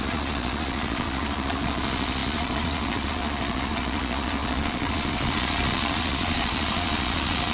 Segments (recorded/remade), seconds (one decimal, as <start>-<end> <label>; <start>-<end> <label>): 0.0-7.5 remade